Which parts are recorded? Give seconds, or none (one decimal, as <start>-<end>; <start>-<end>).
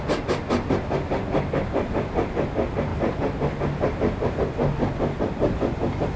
0.0-2.9; 4.3-6.2